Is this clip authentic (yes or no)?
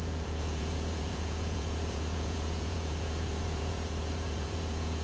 no